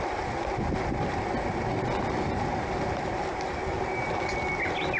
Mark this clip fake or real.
real